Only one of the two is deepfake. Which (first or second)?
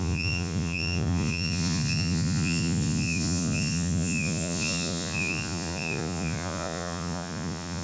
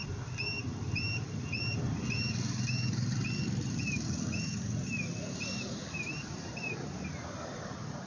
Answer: first